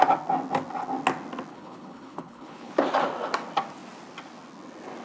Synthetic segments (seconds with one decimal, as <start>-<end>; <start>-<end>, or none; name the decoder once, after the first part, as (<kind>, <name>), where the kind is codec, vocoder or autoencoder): 1.5-2.7 (codec, HILCodec)